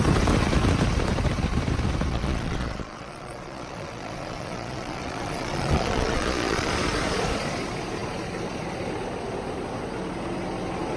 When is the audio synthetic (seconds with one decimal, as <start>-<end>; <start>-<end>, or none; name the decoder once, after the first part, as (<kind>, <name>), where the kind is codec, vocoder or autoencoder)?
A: 2.1-6.7 (vocoder, Vocos)